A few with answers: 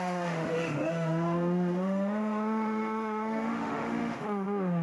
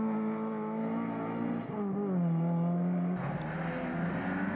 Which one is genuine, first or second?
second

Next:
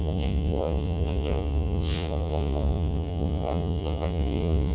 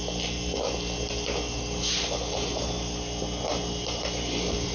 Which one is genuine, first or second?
second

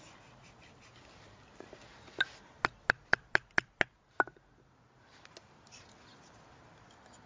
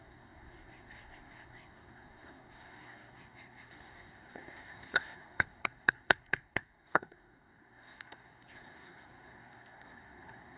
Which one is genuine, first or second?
first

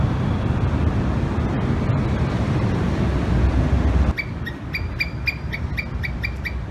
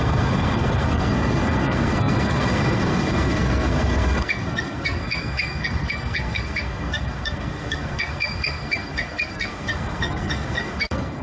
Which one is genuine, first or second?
first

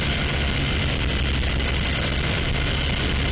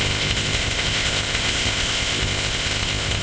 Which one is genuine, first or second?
first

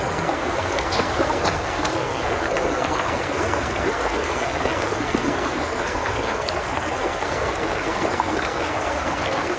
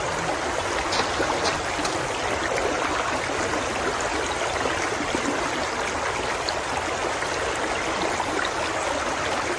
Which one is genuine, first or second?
second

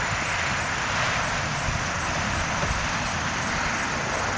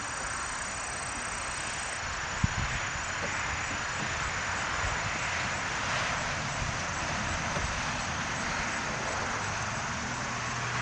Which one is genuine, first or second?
second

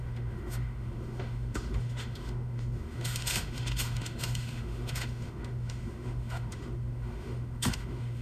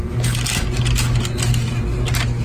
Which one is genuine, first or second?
second